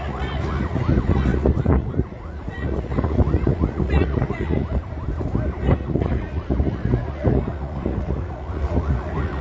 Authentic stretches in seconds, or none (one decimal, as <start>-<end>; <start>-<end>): 4.8-5.6